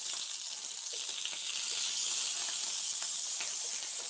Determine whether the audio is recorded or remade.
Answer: recorded